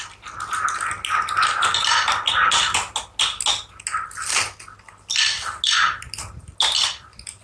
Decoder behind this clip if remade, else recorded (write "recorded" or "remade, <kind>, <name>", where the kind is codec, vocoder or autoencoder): recorded